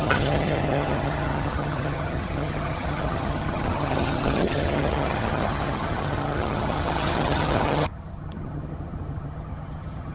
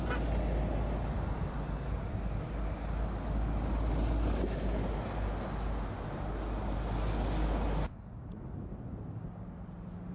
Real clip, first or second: second